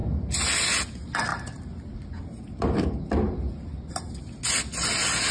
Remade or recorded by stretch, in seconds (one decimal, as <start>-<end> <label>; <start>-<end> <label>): 0.0-5.3 recorded